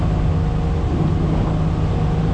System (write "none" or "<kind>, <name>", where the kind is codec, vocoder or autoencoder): none